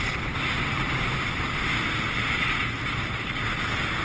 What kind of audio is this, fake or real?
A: real